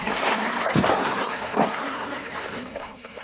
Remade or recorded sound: remade